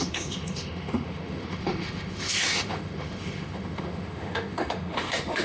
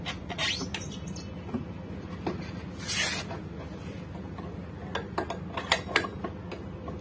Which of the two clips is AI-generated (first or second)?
first